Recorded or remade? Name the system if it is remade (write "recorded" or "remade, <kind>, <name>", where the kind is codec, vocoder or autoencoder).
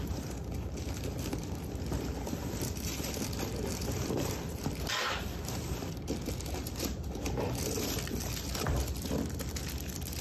remade, vocoder, BigVGAN v2